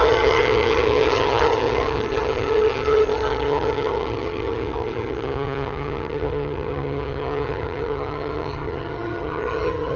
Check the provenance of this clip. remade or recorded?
remade